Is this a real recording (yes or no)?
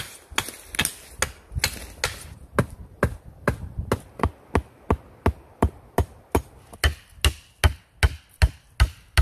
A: yes